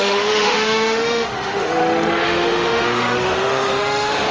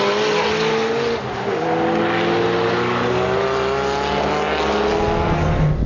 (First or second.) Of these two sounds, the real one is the second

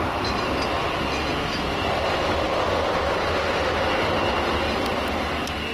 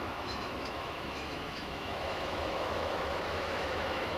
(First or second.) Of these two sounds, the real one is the first